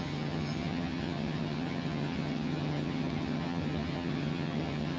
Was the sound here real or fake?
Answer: fake